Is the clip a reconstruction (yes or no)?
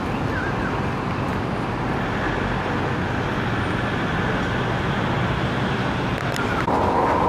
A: no